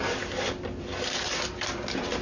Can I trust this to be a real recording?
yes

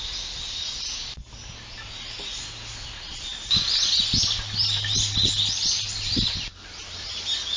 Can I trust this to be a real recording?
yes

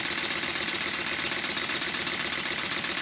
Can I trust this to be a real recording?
yes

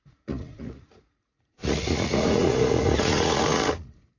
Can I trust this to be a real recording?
no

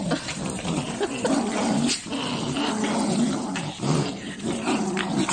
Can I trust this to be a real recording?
yes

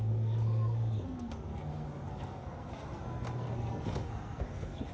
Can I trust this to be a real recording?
no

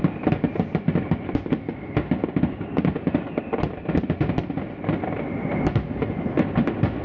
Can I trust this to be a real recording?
yes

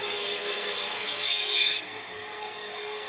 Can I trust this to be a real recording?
no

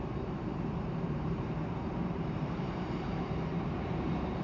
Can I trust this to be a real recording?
no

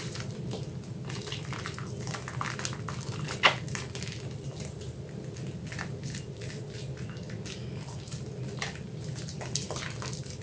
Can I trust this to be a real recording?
yes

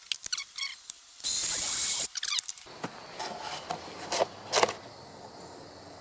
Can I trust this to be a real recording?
yes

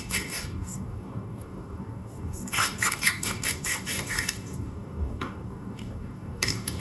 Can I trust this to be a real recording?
no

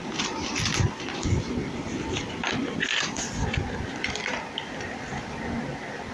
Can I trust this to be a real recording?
yes